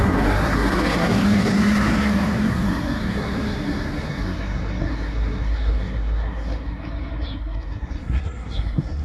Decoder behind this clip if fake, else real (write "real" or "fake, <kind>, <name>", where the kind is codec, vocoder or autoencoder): fake, codec, SNAC